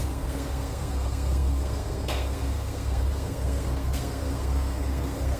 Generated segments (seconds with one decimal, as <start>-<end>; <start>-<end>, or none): 0.0-5.4